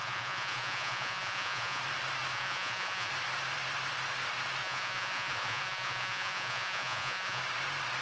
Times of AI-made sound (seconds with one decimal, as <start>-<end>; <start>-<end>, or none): 0.0-1.8; 2.3-3.1; 4.6-7.4